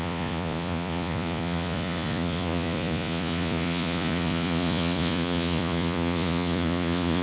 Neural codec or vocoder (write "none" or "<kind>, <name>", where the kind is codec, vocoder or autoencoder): vocoder, Vocos